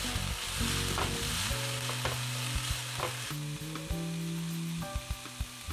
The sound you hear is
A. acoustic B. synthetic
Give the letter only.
A